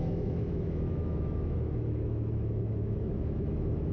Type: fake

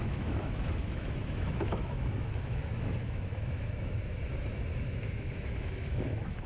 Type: fake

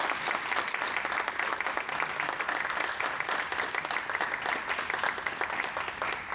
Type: real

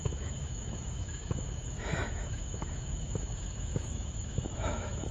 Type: fake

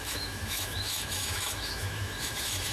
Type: fake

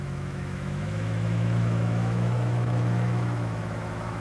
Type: fake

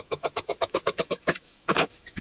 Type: fake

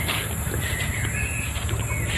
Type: real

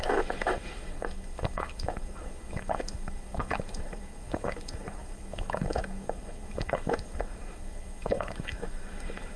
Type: fake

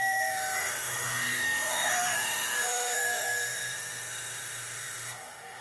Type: fake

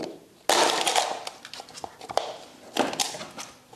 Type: real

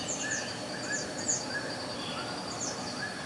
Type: real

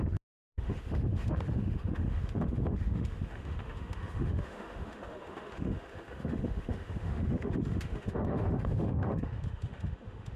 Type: fake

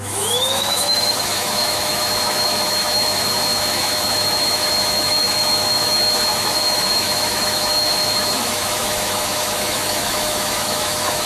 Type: fake